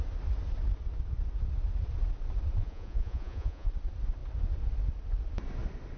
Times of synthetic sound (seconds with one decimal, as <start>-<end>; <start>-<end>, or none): 2.6-3.7